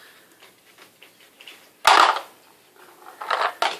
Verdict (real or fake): real